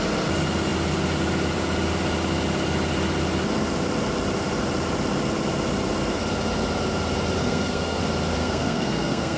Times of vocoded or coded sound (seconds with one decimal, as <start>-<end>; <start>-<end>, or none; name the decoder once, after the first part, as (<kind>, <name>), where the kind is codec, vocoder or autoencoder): 7.4-8.0 (codec, SNAC); 8.4-9.4